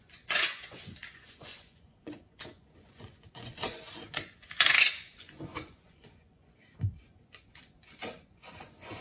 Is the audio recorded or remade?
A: remade